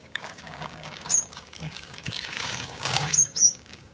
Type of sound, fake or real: fake